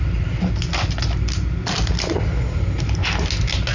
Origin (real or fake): real